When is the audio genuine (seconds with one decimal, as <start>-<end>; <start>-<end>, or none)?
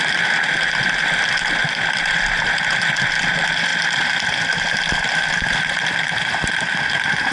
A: 0.0-7.3